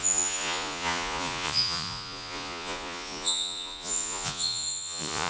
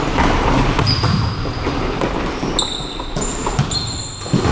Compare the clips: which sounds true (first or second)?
second